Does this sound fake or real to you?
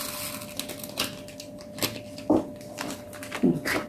real